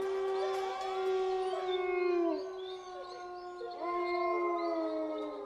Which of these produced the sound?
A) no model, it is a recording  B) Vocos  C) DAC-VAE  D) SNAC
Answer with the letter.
A